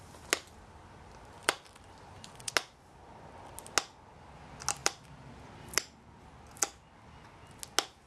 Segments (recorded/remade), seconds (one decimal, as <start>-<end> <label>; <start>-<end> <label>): 0.0-1.4 recorded; 1.4-2.5 remade; 2.5-4.8 recorded; 4.8-5.3 remade; 5.3-8.1 recorded

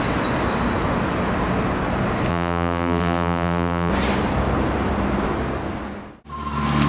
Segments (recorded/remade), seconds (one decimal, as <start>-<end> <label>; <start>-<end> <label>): 0.0-2.3 recorded; 2.3-3.9 remade; 3.9-6.9 recorded

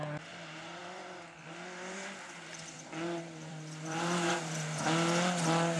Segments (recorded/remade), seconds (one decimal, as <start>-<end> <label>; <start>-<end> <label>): 0.0-0.8 recorded; 0.8-4.3 remade; 4.3-5.8 recorded

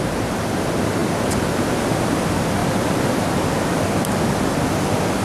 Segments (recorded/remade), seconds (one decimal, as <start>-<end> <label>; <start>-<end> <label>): 0.0-2.6 recorded; 2.6-3.4 remade; 3.4-5.2 recorded

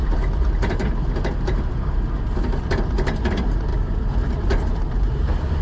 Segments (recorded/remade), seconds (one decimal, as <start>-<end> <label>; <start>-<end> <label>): 0.0-2.1 remade; 2.1-3.7 recorded; 3.7-5.6 remade